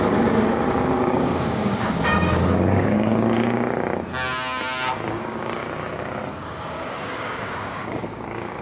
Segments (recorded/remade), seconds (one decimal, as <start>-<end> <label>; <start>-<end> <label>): 0.0-3.1 remade; 3.1-5.1 recorded; 5.1-5.6 remade; 5.6-6.3 recorded; 6.3-8.6 remade